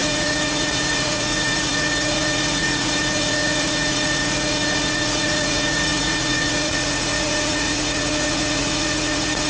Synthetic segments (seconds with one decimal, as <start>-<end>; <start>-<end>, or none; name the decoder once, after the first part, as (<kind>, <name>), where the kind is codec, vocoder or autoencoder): 0.0-9.5 (vocoder, Vocos)

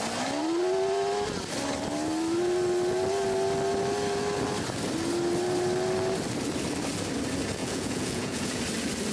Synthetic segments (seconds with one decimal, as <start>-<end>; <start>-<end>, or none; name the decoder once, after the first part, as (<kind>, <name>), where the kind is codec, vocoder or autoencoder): 7.6-8.6 (vocoder, Vocos)

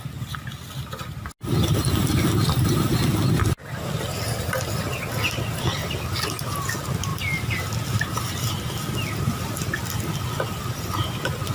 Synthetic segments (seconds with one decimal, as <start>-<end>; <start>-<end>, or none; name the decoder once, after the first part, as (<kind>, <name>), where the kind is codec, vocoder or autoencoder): none

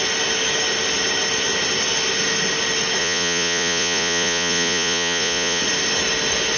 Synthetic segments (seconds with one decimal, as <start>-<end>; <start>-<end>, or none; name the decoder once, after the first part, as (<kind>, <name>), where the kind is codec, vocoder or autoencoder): 3.0-5.6 (vocoder, Vocos)

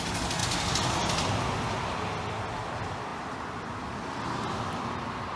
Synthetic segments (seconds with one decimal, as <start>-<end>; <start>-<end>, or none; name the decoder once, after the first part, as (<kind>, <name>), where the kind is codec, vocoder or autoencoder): none

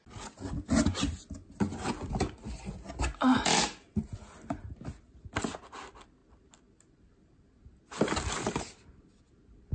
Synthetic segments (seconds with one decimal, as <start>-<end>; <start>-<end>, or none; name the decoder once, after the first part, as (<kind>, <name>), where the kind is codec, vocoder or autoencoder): none

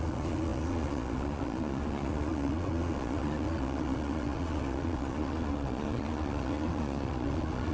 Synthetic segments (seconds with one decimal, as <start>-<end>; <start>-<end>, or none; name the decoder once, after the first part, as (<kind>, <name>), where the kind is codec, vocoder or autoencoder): 0.0-7.7 (vocoder, Vocos)

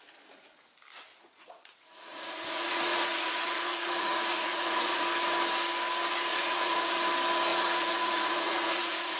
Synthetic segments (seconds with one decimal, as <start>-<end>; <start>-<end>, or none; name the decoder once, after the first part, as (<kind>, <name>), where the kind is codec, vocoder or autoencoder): 1.1-5.0 (vocoder, Vocos); 6.3-6.9; 7.5-9.2